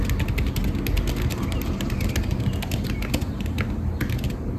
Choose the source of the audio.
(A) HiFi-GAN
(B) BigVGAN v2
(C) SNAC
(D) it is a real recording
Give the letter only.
D